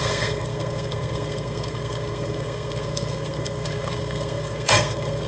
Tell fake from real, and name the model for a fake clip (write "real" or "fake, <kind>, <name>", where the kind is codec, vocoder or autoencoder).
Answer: fake, codec, SNAC